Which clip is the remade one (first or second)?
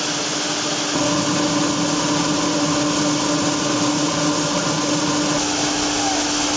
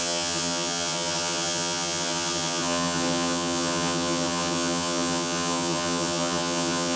second